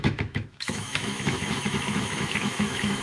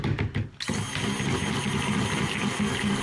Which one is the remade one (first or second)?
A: first